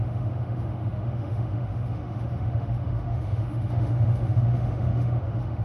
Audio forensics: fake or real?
fake